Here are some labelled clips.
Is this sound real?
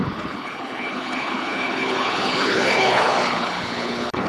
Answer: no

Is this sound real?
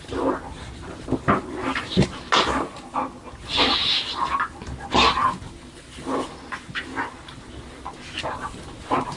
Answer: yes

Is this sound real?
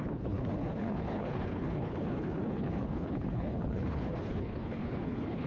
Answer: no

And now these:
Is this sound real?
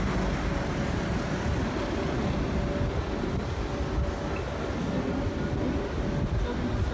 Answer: yes